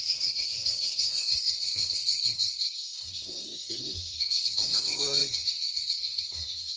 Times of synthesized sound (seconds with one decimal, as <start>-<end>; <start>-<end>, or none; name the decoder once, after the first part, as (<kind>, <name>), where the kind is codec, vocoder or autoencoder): 0.0-6.8 (codec, SNAC)